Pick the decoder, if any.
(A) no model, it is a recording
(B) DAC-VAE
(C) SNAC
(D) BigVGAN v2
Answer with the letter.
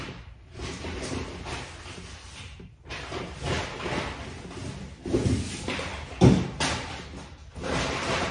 A